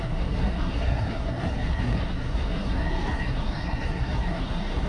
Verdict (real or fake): fake